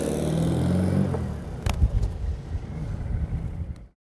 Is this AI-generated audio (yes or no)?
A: no